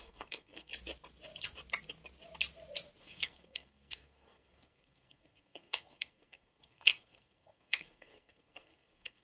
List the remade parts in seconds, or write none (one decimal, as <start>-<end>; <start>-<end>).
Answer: 0.0-0.7; 3.0-9.2